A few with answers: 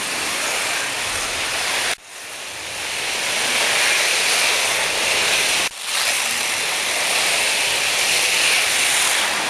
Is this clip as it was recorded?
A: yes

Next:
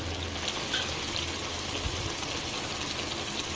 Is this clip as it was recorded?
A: yes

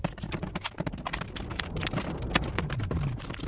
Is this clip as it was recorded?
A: yes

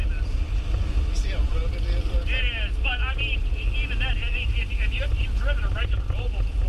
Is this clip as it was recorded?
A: yes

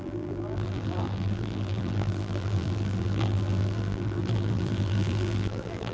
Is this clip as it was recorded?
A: no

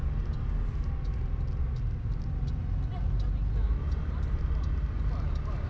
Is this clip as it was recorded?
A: yes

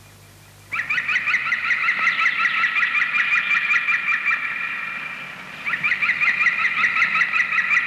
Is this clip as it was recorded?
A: yes